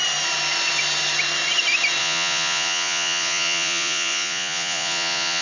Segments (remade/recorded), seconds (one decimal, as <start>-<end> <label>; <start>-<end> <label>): 0.0-2.0 recorded; 2.0-5.4 remade